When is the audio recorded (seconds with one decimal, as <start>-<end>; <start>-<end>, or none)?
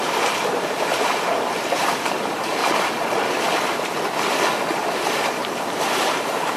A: 2.6-5.1